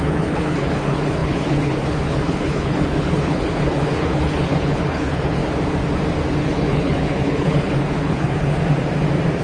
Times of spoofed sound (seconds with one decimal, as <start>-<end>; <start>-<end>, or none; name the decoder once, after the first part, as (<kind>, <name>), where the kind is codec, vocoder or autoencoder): 0.0-5.4 (codec, HILCodec); 6.4-8.6